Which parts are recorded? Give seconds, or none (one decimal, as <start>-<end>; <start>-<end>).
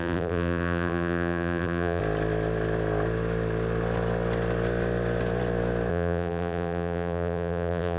2.0-5.9